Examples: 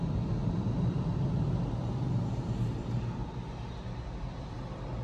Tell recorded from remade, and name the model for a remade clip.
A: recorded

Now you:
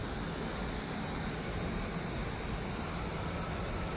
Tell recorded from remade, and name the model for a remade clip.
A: recorded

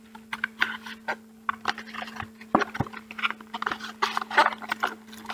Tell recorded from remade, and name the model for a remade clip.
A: recorded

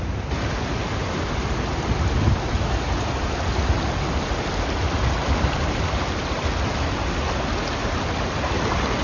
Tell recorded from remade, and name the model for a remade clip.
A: recorded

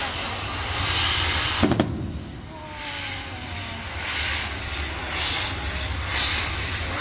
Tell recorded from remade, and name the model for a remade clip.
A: recorded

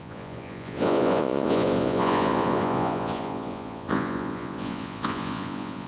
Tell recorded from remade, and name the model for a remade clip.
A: remade, vocoder, Vocos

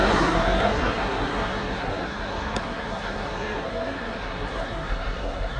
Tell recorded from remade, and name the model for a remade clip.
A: remade, codec, SNAC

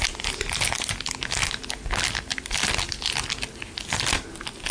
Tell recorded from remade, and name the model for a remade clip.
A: recorded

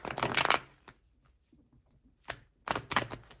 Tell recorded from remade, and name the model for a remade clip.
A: recorded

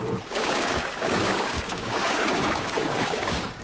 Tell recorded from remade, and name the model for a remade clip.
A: remade, codec, DAC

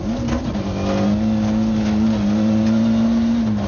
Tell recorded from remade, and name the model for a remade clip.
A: recorded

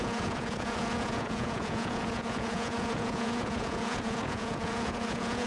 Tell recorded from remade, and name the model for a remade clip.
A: remade, vocoder, Vocos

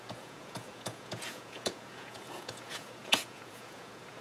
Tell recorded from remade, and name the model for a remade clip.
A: remade, vocoder, Vocos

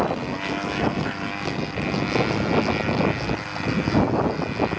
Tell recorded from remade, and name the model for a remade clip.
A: recorded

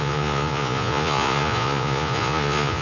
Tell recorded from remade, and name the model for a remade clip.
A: remade, vocoder, Vocos